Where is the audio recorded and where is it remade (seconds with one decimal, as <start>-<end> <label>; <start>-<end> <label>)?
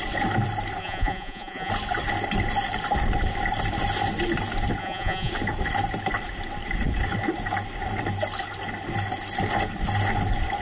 0.0-0.8 recorded; 0.8-1.7 remade; 1.7-4.8 recorded; 4.8-5.3 remade; 5.3-10.6 recorded